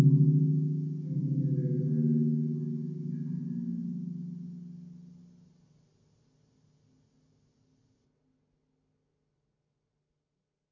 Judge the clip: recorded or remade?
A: recorded